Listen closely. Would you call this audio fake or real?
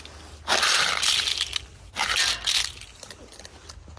real